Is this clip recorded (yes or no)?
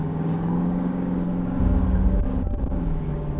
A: no